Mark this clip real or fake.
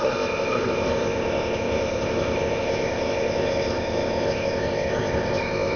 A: fake